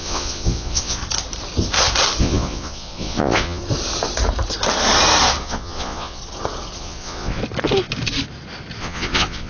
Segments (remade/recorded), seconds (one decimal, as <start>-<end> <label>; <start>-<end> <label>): 0.0-1.0 remade; 1.0-2.2 recorded; 2.2-3.6 remade; 3.6-5.4 recorded; 5.4-6.2 remade; 6.2-6.8 recorded; 6.8-7.4 remade; 7.4-8.8 recorded; 8.8-9.5 remade